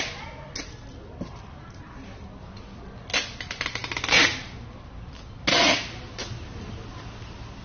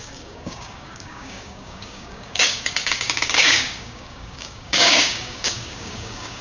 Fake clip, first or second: second